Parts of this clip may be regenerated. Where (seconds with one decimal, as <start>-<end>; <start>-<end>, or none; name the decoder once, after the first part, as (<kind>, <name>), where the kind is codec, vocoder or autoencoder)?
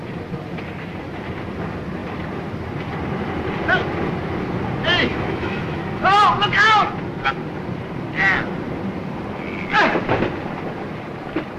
5.1-5.8 (autoencoder, DAC-VAE)